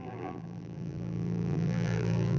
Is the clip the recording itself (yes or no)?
no